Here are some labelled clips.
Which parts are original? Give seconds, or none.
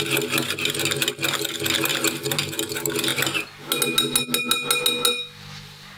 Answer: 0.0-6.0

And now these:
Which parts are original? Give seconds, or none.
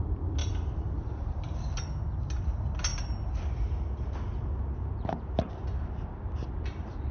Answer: 0.0-7.1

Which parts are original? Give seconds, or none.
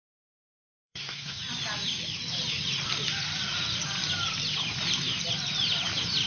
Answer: 1.4-6.3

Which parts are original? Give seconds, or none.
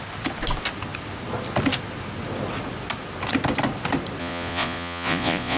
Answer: 0.0-4.2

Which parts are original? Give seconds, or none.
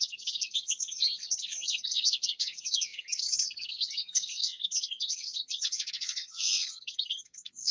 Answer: none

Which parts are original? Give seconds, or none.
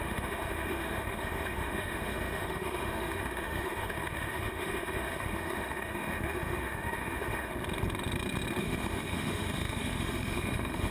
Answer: 7.5-8.6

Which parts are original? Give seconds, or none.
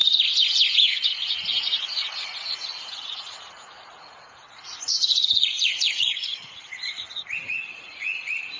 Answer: 0.0-0.7